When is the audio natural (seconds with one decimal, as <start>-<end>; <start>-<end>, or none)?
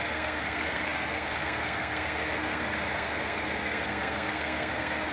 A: none